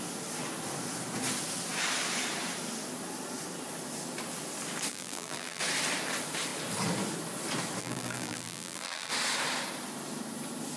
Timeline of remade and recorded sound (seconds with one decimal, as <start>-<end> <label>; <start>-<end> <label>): 0.0-4.9 recorded; 4.9-5.6 remade; 5.6-7.8 recorded; 7.8-9.1 remade; 9.1-10.8 recorded

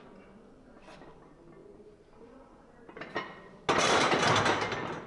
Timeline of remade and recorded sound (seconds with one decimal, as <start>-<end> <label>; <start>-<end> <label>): 0.0-5.1 recorded

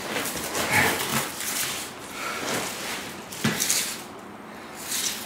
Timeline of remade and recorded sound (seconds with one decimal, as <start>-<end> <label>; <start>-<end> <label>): 0.0-1.1 recorded; 1.1-4.2 remade; 4.2-5.3 recorded

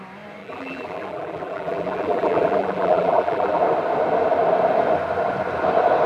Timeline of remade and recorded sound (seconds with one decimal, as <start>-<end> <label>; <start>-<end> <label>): 0.0-0.4 recorded; 0.4-3.6 remade; 3.6-6.1 recorded